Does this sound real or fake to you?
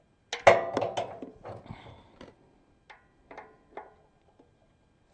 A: real